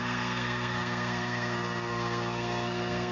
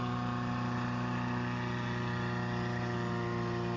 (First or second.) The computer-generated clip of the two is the first